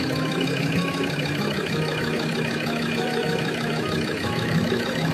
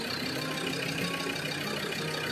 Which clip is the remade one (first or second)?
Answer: first